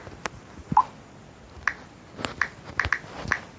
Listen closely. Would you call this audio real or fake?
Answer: real